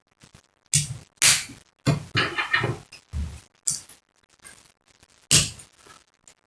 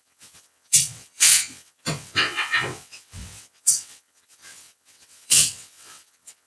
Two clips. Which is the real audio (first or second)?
first